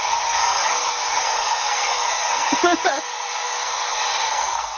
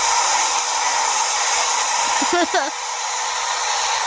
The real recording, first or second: second